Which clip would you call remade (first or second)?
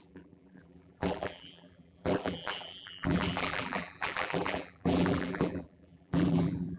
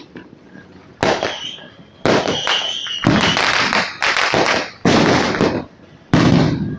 first